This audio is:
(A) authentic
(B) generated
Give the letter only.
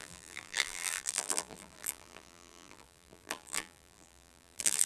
B